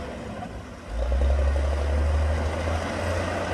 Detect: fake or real real